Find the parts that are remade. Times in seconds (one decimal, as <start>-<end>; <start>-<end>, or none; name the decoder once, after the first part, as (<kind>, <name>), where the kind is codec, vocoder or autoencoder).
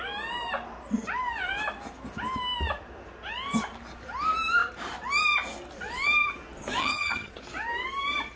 6.8-7.3 (vocoder, HiFi-GAN)